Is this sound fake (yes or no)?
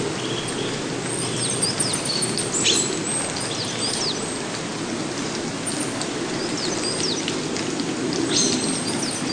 no